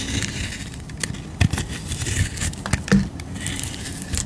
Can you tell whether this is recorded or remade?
recorded